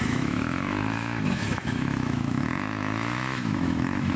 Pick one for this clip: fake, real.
fake